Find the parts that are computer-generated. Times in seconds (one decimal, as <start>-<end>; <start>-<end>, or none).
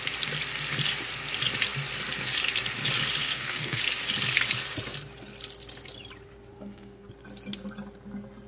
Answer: 3.2-3.8; 6.5-7.1